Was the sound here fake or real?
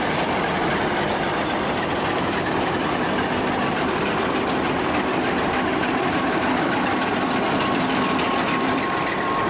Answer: fake